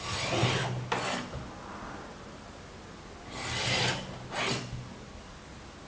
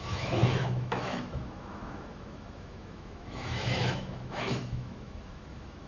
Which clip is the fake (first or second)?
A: second